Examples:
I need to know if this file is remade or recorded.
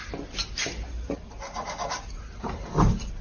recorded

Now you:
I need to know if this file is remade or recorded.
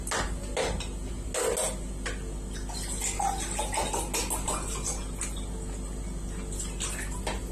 recorded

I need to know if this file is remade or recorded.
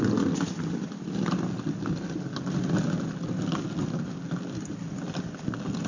recorded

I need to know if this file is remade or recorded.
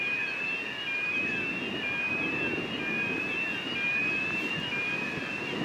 recorded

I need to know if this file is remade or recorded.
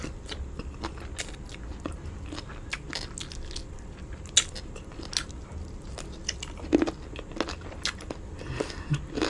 recorded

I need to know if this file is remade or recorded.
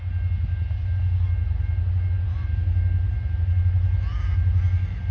recorded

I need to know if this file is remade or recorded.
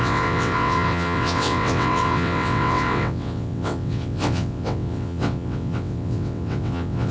remade